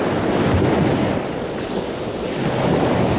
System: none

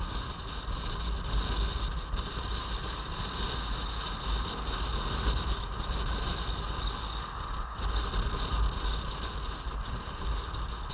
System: none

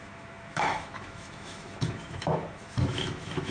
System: autoencoder, DAC-VAE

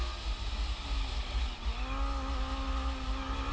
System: none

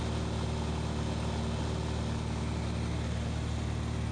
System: none